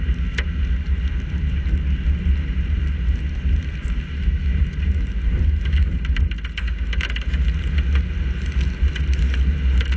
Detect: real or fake real